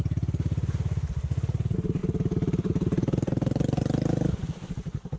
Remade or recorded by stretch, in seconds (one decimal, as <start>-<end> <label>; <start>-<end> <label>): 0.0-5.2 recorded